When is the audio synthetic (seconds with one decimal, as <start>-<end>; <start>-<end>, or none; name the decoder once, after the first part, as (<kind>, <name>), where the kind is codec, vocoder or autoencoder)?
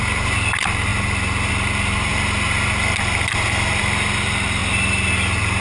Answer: none